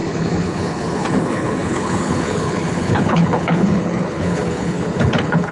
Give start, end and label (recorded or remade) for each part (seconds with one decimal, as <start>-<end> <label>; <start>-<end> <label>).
0.0-5.5 remade